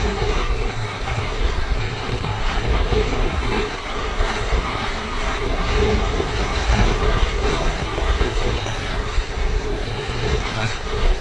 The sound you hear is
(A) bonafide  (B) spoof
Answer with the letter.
B